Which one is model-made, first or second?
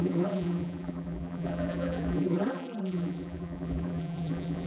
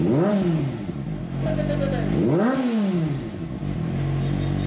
first